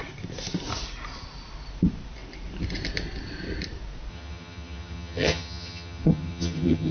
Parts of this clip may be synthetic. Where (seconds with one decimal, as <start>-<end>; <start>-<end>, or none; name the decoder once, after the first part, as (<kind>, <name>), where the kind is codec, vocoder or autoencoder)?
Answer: 4.1-6.9 (vocoder, HiFi-GAN)